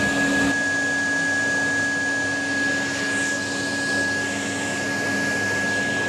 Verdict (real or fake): real